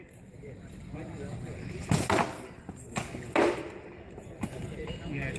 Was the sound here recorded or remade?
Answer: recorded